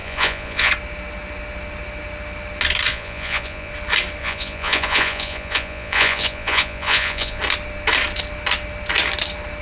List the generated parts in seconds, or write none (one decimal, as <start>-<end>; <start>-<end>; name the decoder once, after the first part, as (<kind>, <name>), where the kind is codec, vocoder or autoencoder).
0.0-0.7 (vocoder, Vocos); 2.9-3.7; 4.2-7.4